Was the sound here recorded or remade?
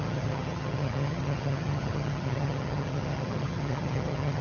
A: remade